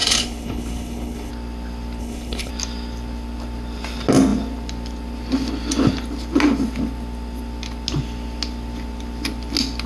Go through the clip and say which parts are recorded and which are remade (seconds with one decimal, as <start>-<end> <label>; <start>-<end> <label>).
0.0-1.3 remade; 1.3-2.0 recorded; 2.0-2.5 remade; 2.5-9.9 recorded